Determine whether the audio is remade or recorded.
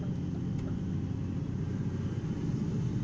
recorded